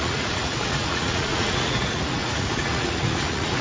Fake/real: fake